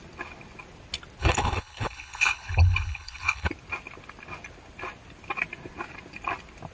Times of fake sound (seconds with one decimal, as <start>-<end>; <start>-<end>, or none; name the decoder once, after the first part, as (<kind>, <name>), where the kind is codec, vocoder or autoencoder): 1.2-3.5 (codec, HILCodec)